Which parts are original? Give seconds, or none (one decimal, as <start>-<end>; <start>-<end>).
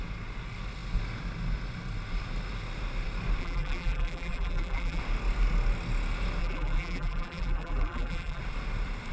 0.0-3.4; 5.0-6.4; 8.4-9.1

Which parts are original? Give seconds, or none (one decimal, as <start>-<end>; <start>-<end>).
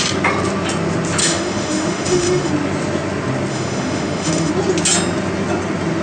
0.0-1.2; 2.5-3.5; 4.5-6.0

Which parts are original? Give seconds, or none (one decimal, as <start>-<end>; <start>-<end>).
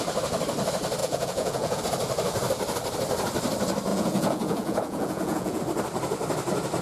0.0-1.0; 1.8-3.9; 5.6-6.8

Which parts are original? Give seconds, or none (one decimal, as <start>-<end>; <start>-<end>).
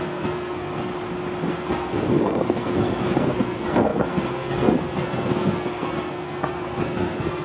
0.9-1.5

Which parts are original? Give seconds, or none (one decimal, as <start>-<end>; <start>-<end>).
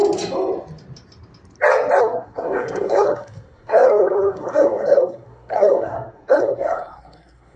0.0-2.0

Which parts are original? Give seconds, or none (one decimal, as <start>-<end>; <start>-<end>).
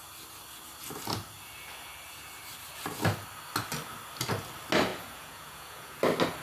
0.0-4.9; 6.0-6.4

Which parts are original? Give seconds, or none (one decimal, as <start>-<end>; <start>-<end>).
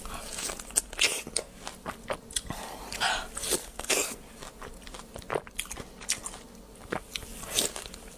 0.0-3.6; 4.2-8.2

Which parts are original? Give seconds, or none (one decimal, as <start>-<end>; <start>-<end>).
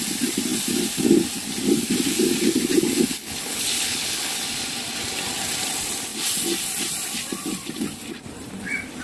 0.0-3.1; 4.4-9.0